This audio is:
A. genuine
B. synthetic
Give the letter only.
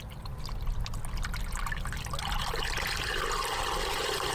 A